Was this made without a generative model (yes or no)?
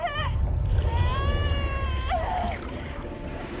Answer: no